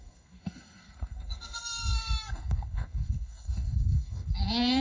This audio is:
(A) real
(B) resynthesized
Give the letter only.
B